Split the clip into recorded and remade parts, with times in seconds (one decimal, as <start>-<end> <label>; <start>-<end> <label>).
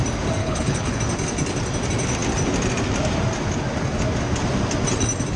0.0-0.4 recorded; 0.4-1.0 remade; 1.0-5.4 recorded